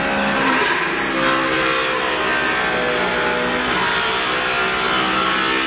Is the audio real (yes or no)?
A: yes